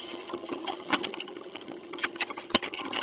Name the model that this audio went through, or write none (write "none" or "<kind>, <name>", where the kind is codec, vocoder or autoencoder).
vocoder, HiFi-GAN